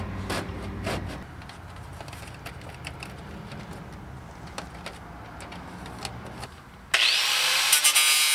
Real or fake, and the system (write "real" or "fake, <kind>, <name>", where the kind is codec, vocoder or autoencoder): real